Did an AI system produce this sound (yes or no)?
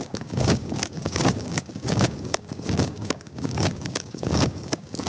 yes